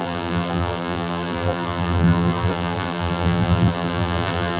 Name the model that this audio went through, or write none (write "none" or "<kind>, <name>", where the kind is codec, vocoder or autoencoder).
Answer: vocoder, BigVGAN v2